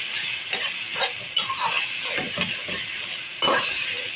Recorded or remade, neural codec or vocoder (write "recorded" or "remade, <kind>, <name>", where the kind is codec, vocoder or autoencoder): recorded